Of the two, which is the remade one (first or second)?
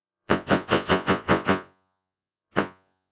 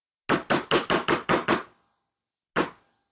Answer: first